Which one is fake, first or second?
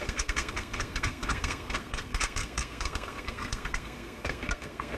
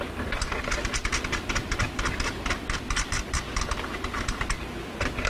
first